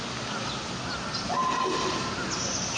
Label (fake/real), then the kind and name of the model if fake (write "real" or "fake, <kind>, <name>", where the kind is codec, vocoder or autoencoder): real